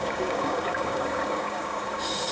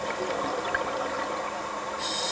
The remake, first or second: first